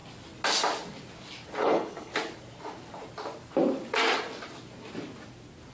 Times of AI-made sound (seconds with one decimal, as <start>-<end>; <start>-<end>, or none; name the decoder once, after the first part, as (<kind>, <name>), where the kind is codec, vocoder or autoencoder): 1.6-2.1 (codec, HILCodec)